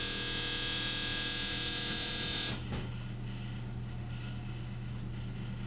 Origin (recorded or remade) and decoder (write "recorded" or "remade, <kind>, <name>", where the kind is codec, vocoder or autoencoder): recorded